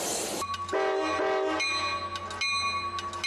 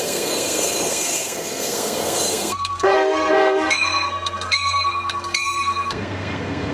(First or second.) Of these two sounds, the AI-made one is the second